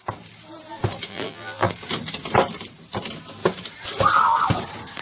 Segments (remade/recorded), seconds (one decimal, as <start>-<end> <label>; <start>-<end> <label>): 0.0-1.1 recorded; 1.1-1.7 remade; 1.7-5.0 recorded